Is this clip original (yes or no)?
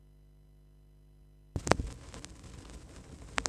yes